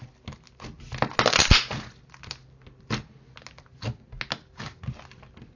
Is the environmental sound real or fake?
real